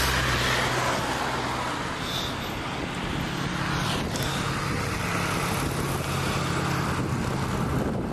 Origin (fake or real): real